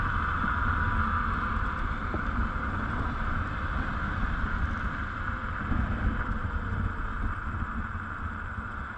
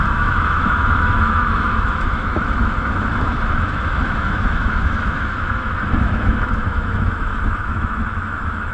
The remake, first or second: second